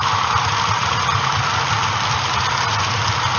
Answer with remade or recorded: recorded